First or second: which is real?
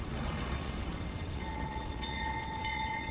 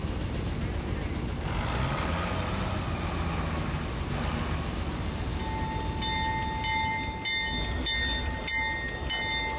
second